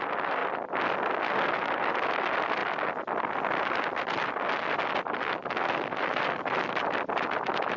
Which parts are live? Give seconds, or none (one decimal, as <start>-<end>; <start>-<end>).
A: 0.0-7.8